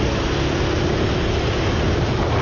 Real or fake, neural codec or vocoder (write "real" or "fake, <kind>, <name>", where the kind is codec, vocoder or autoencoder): real